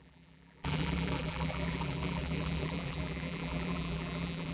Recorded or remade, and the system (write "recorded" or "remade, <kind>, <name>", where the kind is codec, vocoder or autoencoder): remade, vocoder, BigVGAN v2